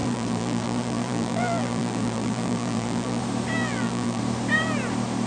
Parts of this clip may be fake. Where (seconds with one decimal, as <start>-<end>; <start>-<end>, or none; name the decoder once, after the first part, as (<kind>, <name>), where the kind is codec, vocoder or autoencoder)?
0.0-3.2 (vocoder, BigVGAN v2); 3.6-4.2